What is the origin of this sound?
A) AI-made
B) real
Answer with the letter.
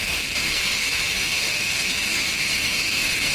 A